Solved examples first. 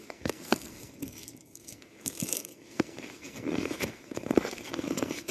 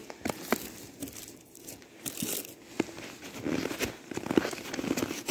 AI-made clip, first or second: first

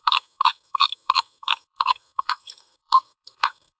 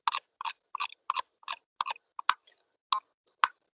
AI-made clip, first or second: first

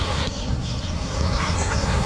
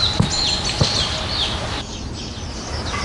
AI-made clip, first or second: first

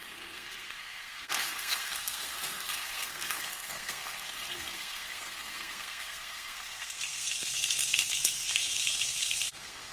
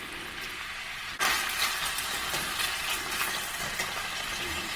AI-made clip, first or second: first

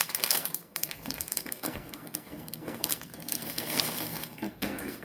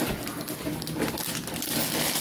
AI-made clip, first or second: first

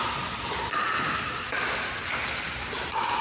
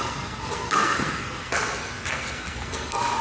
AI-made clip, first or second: second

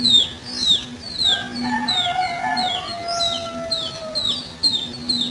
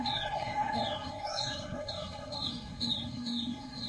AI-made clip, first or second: second